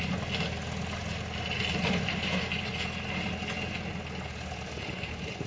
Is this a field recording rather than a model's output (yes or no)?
yes